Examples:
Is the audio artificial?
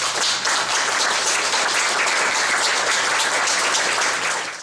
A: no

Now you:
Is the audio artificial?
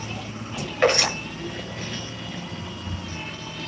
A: no